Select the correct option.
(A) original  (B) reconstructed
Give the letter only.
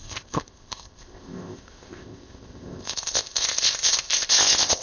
B